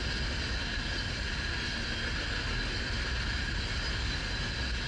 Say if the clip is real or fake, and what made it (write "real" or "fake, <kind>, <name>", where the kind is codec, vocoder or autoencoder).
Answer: real